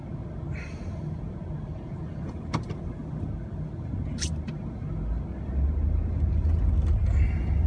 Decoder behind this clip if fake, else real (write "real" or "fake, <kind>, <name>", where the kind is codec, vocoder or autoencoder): real